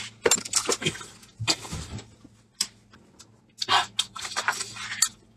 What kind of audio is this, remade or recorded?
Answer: recorded